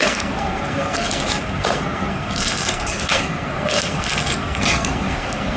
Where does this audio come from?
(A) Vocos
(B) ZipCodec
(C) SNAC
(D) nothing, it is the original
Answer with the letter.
C